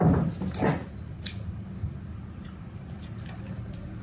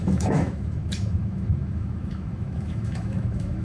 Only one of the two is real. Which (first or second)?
first